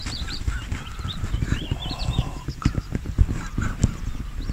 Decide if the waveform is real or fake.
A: real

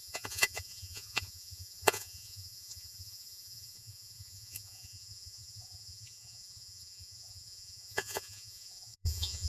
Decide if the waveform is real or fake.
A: fake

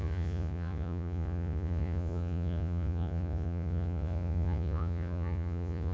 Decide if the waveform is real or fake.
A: fake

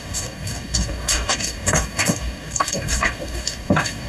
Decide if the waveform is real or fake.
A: fake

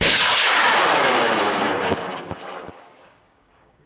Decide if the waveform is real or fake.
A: fake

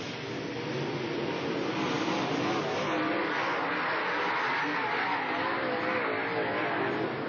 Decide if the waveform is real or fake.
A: real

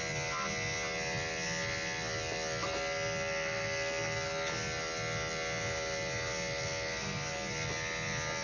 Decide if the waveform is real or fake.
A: real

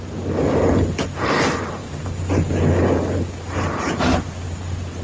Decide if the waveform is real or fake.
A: real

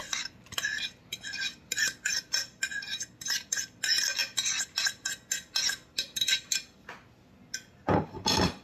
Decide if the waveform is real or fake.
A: real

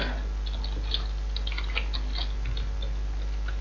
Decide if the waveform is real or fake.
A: real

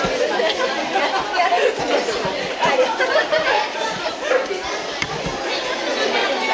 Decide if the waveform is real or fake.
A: real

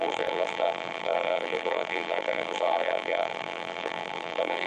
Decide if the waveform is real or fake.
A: fake